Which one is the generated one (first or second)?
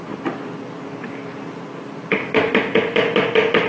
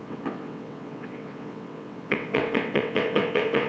second